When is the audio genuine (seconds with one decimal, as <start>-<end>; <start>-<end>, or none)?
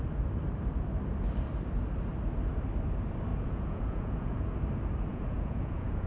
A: 0.0-3.3; 4.5-5.1